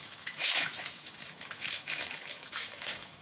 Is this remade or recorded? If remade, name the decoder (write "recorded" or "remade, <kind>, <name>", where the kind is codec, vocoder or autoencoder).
remade, autoencoder, DAC-VAE